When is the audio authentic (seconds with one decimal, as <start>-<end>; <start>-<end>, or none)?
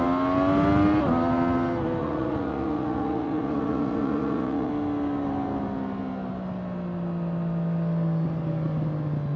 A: 0.0-2.0; 4.7-9.4